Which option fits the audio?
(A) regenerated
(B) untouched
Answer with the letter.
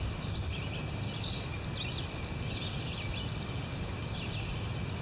B